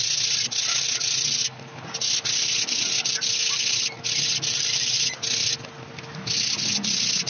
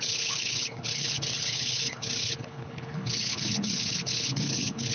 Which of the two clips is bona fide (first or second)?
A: first